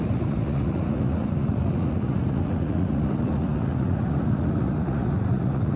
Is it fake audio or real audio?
fake